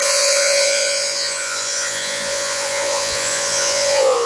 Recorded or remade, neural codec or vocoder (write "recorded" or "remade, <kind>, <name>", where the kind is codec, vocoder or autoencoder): remade, vocoder, Vocos